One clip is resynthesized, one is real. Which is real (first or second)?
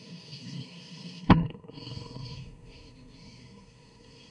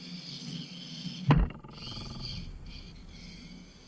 second